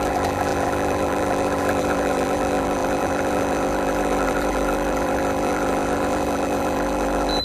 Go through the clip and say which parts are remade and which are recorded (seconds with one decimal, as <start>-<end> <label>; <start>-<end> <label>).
0.0-7.4 remade